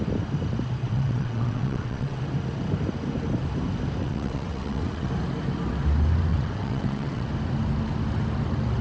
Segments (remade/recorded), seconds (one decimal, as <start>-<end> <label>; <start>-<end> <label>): 0.0-0.8 recorded; 0.8-2.2 remade; 2.2-4.0 recorded; 4.0-5.1 remade; 5.1-6.3 recorded; 6.3-7.3 remade; 7.3-8.8 recorded